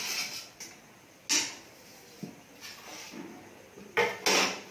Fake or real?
real